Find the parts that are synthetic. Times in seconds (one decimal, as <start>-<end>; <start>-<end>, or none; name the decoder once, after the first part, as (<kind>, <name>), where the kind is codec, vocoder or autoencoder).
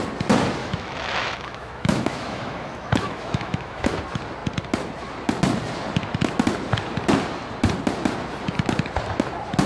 0.6-4.0 (autoencoder, DAC-VAE)